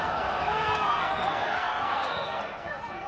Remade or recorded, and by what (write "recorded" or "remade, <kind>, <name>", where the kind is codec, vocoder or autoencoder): remade, codec, SNAC